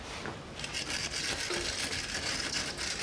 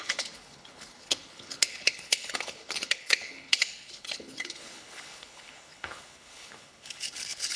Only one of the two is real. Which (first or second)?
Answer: first